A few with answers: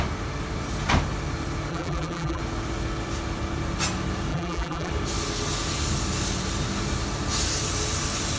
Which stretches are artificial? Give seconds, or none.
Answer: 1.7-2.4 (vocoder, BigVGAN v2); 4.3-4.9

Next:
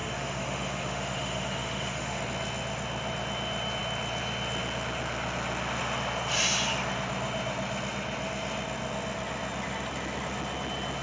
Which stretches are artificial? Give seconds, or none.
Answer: 0.0-2.2 (autoencoder, DAC-VAE)

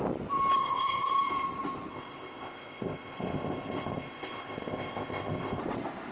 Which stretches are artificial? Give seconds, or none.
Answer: 0.6-1.1 (codec, ZipCodec); 1.9-5.6

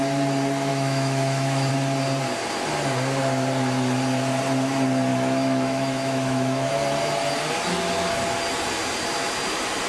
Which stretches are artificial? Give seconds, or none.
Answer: 0.7-1.7 (autoencoder, DAC-VAE); 5.1-6.7

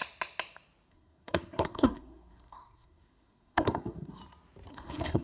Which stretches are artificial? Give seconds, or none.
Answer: 0.9-4.2 (codec, SNAC); 4.7-5.2

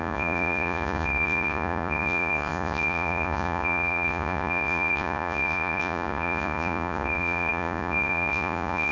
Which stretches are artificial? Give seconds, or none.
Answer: 0.0-8.9 (vocoder, Vocos)